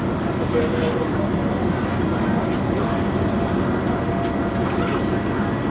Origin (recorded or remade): recorded